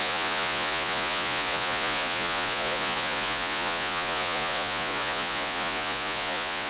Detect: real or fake fake